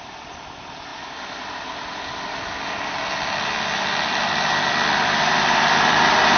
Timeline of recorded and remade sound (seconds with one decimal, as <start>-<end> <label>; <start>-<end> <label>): 0.0-0.9 remade; 0.9-4.7 recorded; 4.7-6.4 remade